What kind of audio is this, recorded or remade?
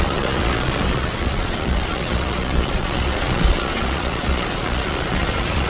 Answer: remade